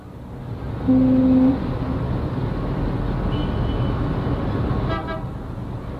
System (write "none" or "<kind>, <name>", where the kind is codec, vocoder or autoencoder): none